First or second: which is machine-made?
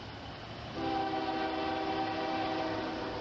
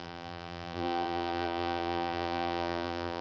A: second